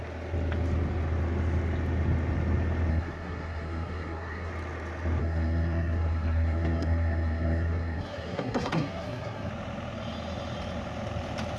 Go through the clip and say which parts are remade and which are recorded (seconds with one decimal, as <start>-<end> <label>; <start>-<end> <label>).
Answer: 0.0-2.9 recorded; 2.9-4.5 remade; 4.5-5.2 recorded; 5.2-9.5 remade; 9.5-11.6 recorded